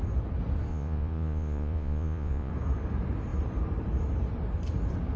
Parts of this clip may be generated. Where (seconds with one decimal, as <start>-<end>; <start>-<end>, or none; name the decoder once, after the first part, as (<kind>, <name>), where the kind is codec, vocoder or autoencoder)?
0.7-2.5 (vocoder, Vocos)